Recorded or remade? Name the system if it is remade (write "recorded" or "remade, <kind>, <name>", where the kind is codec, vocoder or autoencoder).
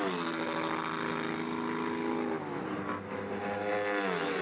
recorded